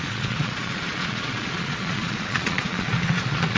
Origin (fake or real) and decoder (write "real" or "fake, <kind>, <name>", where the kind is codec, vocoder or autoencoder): fake, vocoder, Vocos